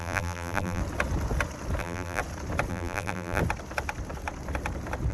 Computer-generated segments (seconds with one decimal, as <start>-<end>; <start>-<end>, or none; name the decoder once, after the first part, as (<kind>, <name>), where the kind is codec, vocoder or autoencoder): 0.0-0.8 (vocoder, BigVGAN v2); 1.8-2.2; 2.7-3.4